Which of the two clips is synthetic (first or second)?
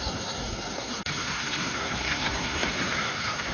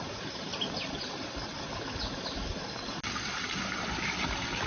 first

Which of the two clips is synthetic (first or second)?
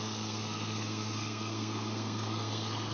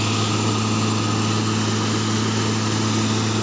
first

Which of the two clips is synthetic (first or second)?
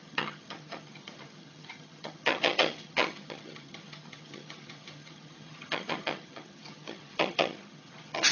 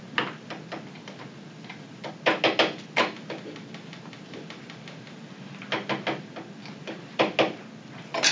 first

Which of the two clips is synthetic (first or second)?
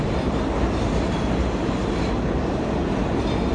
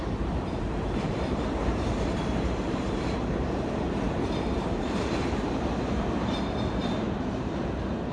second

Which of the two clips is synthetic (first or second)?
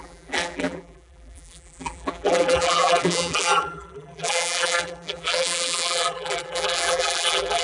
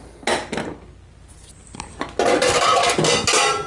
first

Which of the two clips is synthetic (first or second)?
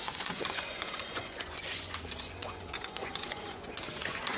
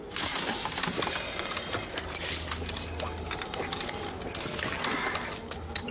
first